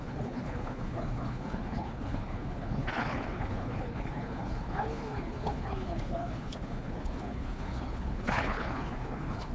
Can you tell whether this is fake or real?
fake